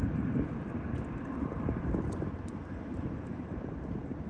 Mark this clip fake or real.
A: real